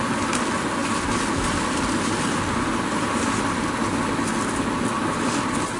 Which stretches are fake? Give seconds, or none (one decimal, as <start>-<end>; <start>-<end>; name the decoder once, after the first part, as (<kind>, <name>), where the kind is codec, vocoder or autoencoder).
none